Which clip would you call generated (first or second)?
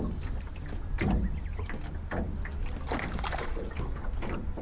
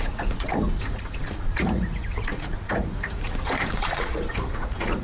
second